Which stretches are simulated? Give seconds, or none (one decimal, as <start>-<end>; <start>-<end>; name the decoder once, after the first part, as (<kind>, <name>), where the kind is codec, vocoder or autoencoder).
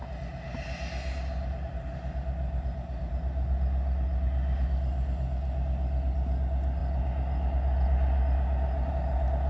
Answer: none